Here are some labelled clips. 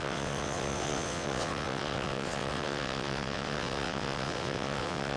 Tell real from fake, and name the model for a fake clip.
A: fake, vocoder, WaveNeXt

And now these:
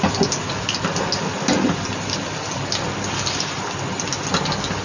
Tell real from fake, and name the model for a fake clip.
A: real